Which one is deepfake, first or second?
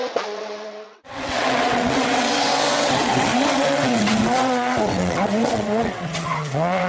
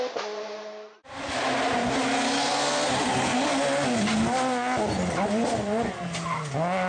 first